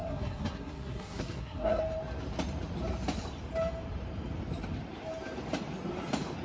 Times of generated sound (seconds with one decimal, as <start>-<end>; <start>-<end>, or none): 0.0-1.8